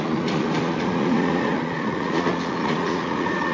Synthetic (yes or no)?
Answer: yes